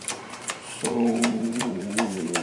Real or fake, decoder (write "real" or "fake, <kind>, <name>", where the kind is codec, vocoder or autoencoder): fake, vocoder, BigVGAN v2